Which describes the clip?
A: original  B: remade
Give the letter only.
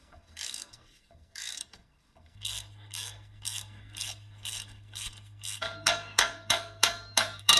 B